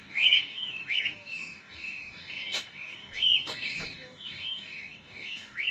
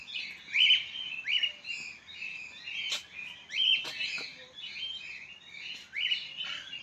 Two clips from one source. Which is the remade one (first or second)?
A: first